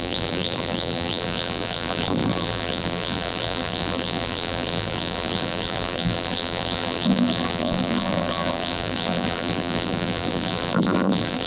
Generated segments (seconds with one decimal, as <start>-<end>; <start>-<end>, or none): 0.0-11.5